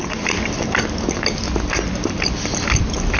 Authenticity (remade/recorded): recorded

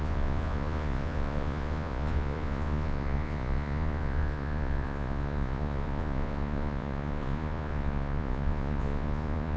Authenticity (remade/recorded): remade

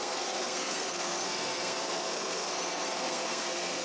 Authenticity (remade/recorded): remade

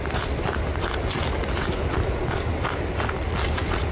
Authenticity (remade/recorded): recorded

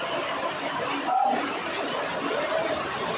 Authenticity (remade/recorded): recorded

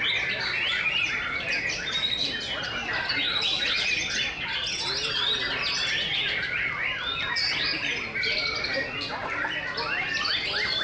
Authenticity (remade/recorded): recorded